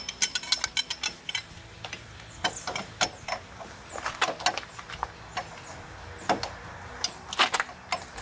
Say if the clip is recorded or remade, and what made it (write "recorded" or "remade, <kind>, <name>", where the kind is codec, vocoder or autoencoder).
recorded